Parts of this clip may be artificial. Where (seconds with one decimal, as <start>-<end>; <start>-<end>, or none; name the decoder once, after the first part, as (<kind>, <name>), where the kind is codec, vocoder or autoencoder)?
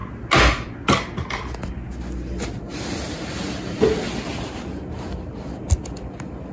none